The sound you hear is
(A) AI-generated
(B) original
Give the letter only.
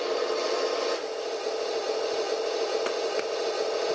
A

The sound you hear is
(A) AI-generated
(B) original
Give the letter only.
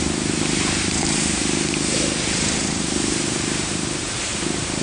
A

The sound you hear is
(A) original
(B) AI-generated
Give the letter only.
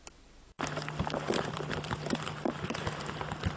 B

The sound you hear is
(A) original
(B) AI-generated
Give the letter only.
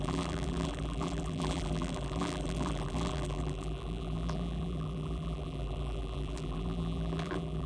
B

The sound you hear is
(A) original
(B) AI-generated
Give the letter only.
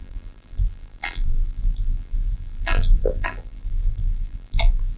B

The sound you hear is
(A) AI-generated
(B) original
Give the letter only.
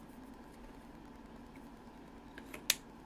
B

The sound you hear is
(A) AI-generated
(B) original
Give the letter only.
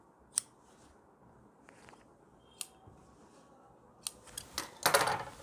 B